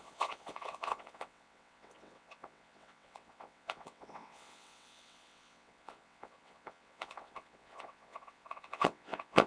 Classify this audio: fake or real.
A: fake